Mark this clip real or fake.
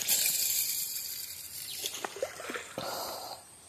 fake